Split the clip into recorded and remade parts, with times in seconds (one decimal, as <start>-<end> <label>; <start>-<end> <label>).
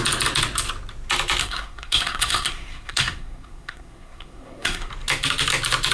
0.0-1.4 recorded; 1.4-4.9 remade; 4.9-5.9 recorded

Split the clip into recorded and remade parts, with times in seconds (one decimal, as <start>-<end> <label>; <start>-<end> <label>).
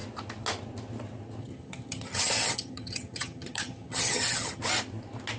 0.0-1.4 recorded; 1.4-4.6 remade; 4.6-5.4 recorded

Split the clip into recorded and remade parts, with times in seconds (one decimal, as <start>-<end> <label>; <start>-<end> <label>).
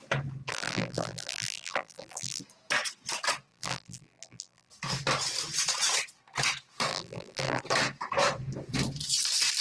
0.0-0.5 recorded; 0.5-2.4 remade; 2.4-3.5 recorded; 3.5-4.7 remade; 4.7-6.9 recorded; 6.9-7.6 remade; 7.6-9.6 recorded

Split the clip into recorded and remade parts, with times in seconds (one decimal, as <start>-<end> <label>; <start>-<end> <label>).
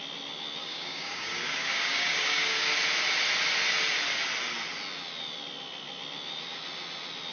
0.0-0.6 recorded; 0.6-2.7 remade; 2.7-7.3 recorded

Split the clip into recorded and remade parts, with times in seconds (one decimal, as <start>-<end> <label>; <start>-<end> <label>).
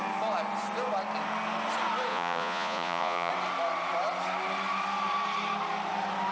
0.0-2.1 recorded; 2.1-3.3 remade; 3.3-6.3 recorded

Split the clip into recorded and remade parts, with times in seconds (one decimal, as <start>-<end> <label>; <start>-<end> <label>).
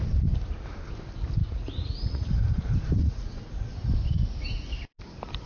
0.0-1.4 recorded; 1.4-2.3 remade; 2.3-3.0 recorded; 3.0-3.5 remade; 3.5-5.5 recorded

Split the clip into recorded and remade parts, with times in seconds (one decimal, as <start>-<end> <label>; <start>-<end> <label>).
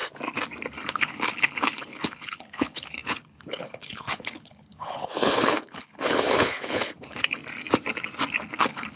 0.0-0.9 recorded; 0.9-7.4 remade; 7.4-8.5 recorded; 8.5-9.0 remade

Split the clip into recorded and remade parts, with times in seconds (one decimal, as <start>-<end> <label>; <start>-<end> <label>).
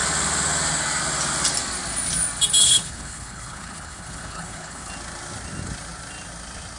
0.0-2.6 recorded; 2.6-4.9 remade; 4.9-6.8 recorded